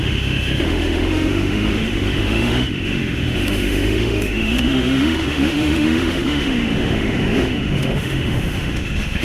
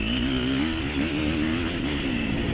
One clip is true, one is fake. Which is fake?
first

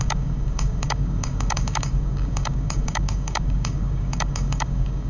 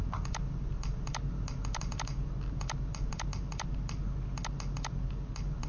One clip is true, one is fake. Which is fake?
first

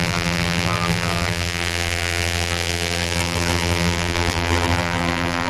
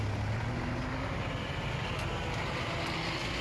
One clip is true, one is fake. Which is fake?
first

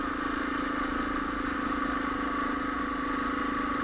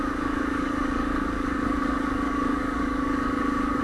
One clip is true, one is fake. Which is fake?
second